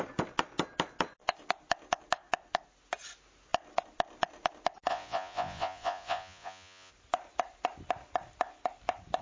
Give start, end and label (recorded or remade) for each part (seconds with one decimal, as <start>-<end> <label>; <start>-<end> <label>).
0.0-4.9 recorded; 4.9-6.9 remade; 6.9-9.2 recorded